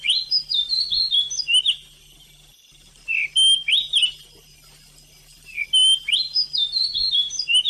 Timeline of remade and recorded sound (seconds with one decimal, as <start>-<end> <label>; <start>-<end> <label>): 0.0-7.7 recorded